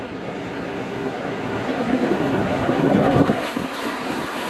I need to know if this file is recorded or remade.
remade